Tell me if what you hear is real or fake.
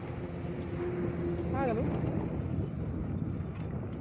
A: real